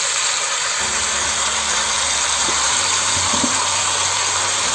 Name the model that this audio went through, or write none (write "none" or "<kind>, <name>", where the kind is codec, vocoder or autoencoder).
vocoder, BigVGAN v2